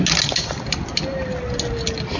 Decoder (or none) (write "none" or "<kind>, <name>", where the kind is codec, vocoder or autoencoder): none